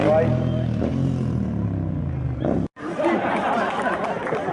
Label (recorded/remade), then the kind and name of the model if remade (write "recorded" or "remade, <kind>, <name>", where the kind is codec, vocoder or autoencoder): recorded